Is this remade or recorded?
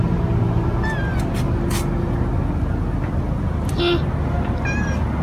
recorded